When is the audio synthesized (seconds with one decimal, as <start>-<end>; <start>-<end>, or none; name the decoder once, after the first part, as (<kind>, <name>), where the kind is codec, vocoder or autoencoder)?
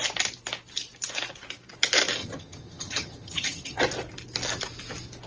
2.2-3.8 (vocoder, HiFi-GAN)